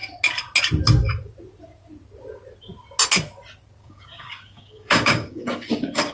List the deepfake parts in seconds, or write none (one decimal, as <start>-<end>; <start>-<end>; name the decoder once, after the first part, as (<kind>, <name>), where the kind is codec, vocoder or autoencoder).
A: 3.8-6.1 (codec, DAC)